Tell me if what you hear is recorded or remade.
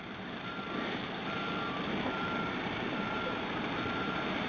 remade